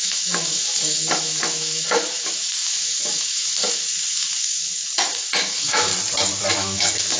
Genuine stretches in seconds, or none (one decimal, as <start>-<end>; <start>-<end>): 5.9-6.5